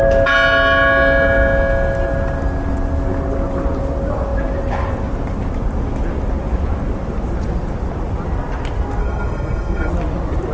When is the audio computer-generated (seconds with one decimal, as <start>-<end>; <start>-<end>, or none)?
9.0-9.9